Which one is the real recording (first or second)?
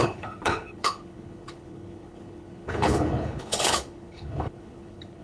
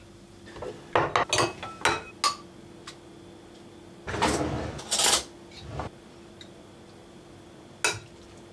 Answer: second